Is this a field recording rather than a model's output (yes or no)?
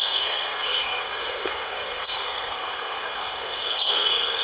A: no